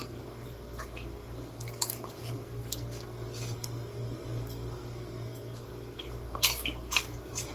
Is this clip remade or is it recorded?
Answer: remade